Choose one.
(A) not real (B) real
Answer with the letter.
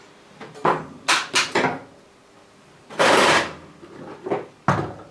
B